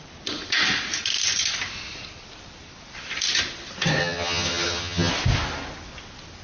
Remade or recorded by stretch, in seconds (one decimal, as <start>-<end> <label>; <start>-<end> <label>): 0.0-4.0 recorded; 4.0-5.1 remade; 5.1-6.4 recorded